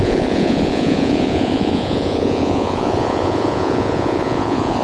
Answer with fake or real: fake